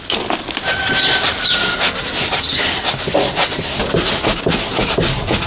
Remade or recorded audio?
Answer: recorded